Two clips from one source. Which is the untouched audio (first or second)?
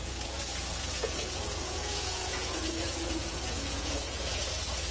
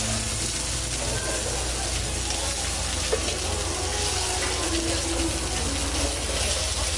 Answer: second